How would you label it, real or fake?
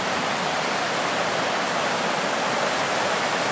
real